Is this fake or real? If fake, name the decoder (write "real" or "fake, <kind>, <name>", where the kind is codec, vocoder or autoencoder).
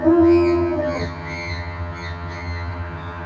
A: fake, vocoder, HiFi-GAN